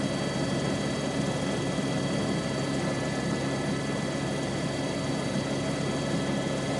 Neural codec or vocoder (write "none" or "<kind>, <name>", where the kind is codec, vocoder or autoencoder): none